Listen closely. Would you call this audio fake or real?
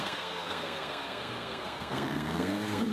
fake